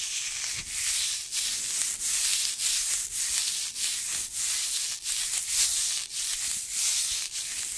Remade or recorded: recorded